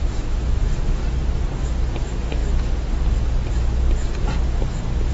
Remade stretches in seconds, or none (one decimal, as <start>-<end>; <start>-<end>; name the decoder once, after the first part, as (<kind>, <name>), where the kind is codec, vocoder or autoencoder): 0.0-1.0 (autoencoder, DAC-VAE); 2.0-2.4